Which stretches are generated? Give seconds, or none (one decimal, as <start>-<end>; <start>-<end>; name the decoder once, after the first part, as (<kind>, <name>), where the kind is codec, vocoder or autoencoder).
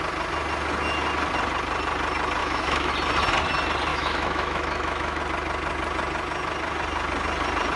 2.4-2.9 (autoencoder, DAC-VAE); 3.9-5.2